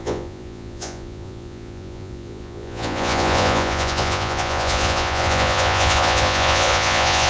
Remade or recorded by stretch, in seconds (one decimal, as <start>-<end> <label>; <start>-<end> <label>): 0.0-7.3 remade